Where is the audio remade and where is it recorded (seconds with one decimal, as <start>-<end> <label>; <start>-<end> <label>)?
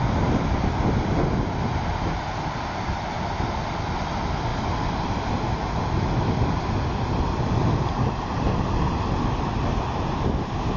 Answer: 0.0-10.8 recorded